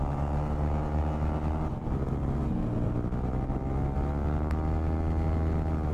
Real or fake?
real